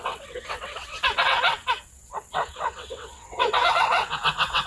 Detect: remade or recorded remade